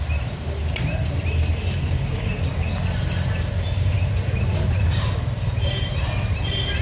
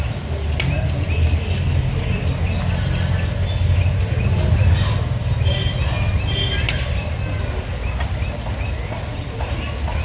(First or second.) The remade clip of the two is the first